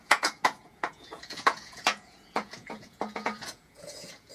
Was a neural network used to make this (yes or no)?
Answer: yes